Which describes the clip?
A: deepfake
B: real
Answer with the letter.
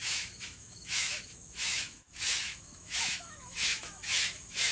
A